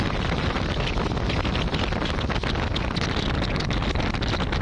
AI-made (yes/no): no